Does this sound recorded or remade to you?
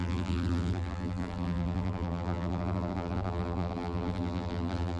remade